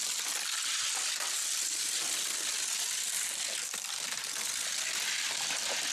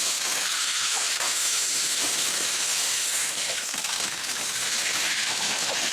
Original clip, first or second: first